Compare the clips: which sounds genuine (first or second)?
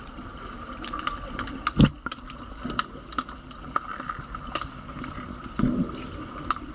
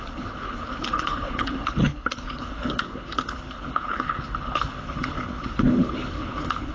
first